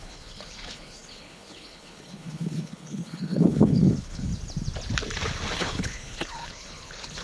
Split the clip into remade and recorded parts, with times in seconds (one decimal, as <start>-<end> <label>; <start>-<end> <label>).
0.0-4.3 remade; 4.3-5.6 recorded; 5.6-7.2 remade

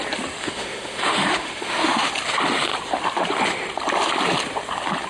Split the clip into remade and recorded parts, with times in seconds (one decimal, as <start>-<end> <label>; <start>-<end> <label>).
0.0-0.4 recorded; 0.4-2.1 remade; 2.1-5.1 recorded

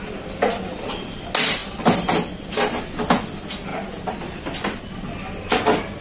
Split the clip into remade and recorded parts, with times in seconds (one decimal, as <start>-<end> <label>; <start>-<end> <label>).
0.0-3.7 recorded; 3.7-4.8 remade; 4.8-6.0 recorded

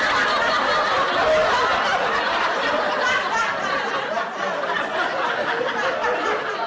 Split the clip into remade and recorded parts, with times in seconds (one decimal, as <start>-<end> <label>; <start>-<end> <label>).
0.0-1.9 recorded; 1.9-2.9 remade; 2.9-6.7 recorded

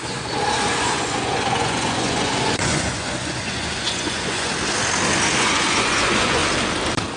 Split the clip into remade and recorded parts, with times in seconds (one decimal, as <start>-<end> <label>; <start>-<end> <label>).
0.0-4.5 remade; 4.5-5.4 recorded; 5.4-6.4 remade; 6.4-7.2 recorded

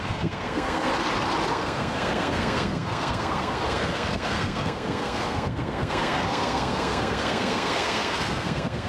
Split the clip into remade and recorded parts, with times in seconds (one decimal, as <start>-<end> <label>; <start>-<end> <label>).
0.0-0.9 remade; 0.9-1.5 recorded; 1.5-8.9 remade

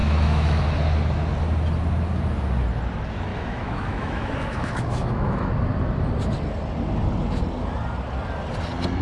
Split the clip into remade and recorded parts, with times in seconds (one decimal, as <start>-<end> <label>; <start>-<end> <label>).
0.0-0.6 remade; 0.6-3.3 recorded; 3.3-5.5 remade; 5.5-9.0 recorded

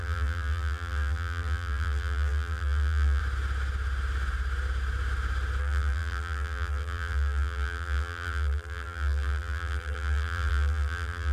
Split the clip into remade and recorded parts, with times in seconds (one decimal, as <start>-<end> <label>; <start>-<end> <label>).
0.0-3.2 remade; 3.2-5.6 recorded; 5.6-11.3 remade